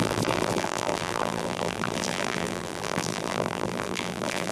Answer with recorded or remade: remade